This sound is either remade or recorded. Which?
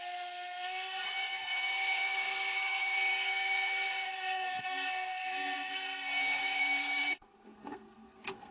remade